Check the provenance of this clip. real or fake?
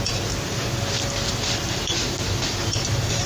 real